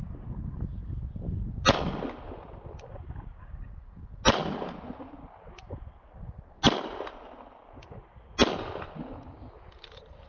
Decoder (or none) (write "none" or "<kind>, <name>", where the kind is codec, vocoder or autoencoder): none